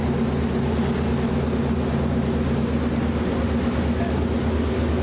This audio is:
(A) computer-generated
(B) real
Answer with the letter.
B